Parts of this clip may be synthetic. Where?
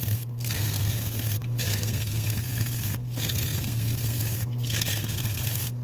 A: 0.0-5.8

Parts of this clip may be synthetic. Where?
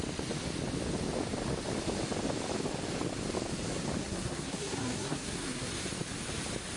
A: 4.0-5.7